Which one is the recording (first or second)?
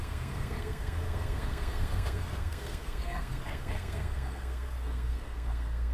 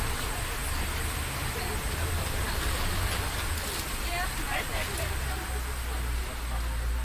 second